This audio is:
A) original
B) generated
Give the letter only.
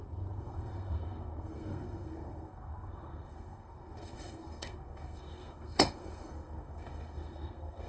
B